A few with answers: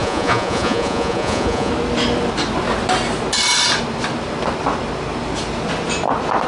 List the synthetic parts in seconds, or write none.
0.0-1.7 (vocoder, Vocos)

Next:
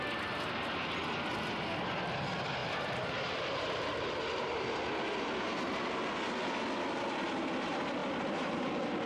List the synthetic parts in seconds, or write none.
2.6-4.7 (vocoder, BigVGAN v2); 8.0-8.7

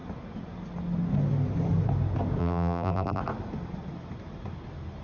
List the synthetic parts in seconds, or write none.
2.4-3.2 (vocoder, BigVGAN v2)

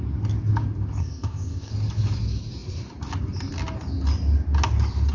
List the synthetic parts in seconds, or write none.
1.0-1.7 (codec, ZipCodec)